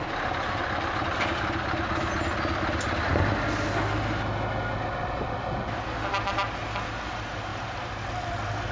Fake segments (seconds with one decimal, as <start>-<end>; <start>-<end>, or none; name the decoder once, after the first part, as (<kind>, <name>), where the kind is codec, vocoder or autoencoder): 7.5-8.0 (vocoder, BigVGAN v2)